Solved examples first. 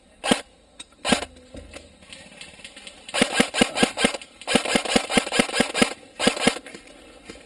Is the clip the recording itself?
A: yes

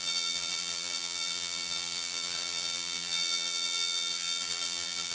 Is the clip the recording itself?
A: no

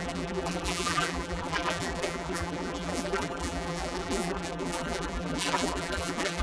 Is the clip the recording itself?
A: no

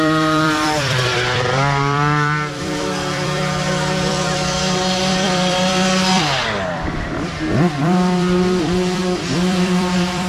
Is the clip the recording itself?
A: no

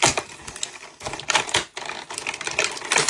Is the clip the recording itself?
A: yes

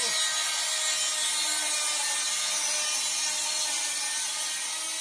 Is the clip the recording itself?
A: yes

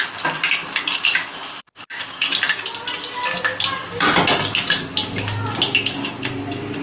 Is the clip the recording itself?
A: yes